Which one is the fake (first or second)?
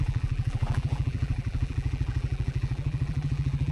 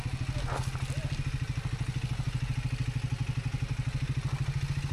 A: first